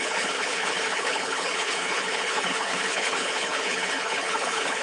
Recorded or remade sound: remade